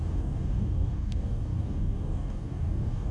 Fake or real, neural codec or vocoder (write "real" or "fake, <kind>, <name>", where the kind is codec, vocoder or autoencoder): fake, codec, DAC